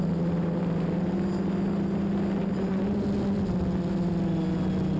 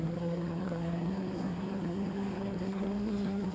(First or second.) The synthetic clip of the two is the second